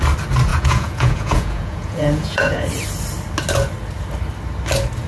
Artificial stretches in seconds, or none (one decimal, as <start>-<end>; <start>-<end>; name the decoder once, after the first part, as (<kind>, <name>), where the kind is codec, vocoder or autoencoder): 0.5-2.7 (vocoder, Vocos)

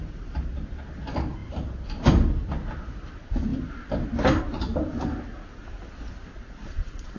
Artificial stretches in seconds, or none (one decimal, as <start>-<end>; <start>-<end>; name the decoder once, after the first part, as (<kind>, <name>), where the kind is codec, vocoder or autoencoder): 6.3-7.2 (vocoder, Vocos)

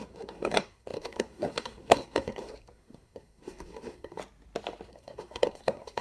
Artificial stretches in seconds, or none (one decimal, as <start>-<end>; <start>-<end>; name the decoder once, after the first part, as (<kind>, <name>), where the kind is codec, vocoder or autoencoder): 0.0-4.2 (codec, SNAC); 4.9-6.0

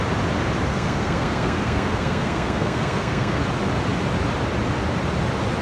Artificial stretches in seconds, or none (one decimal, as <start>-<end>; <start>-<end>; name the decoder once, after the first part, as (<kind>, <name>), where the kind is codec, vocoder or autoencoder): 0.7-3.4 (codec, SNAC)

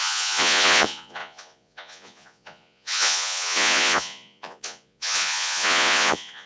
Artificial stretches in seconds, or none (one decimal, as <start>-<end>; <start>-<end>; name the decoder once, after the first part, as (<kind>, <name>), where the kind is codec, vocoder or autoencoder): 0.0-6.5 (vocoder, Vocos)

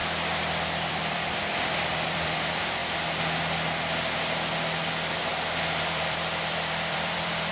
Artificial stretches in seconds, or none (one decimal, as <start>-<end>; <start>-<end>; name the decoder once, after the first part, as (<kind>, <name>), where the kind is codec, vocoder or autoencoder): 0.9-2.8 (vocoder, BigVGAN v2); 5.8-7.5

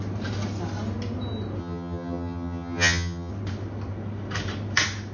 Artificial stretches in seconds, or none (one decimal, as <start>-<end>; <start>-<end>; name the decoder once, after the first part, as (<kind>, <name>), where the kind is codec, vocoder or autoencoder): 1.6-3.3 (vocoder, HiFi-GAN)